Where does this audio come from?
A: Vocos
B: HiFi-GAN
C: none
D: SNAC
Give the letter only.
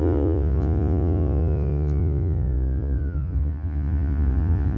A